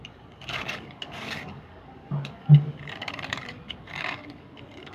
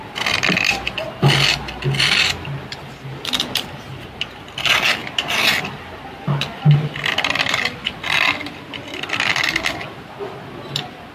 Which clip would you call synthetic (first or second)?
first